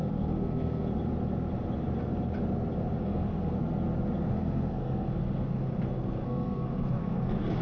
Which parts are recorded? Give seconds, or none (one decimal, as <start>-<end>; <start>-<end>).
0.9-3.0; 3.6-4.3